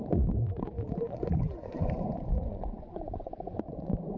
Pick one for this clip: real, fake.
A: fake